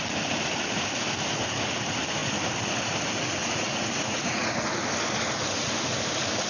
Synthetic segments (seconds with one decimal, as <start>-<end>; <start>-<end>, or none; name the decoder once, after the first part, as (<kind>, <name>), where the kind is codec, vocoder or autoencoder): 3.4-4.5 (vocoder, Vocos)